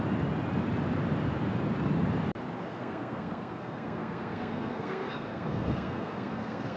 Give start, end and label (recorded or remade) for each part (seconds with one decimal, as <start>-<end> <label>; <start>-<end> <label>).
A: 0.0-2.7 recorded; 2.7-6.8 remade